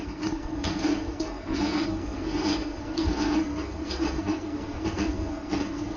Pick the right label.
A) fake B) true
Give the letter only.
A